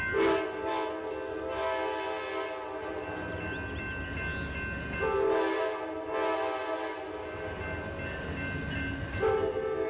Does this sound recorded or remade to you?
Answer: recorded